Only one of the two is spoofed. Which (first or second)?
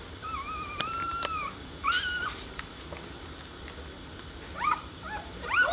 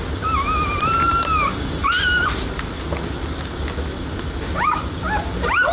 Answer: first